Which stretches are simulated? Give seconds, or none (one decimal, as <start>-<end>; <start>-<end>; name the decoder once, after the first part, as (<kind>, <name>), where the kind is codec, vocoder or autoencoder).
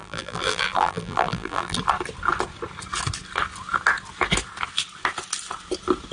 0.0-1.8 (vocoder, BigVGAN v2)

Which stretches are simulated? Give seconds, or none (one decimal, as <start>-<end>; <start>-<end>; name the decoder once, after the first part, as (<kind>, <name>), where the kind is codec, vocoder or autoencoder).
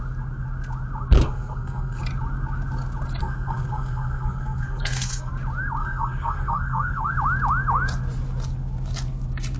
1.2-2.0 (codec, SNAC); 3.2-5.3; 5.8-7.1